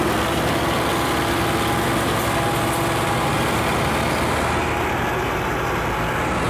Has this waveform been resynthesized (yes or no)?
no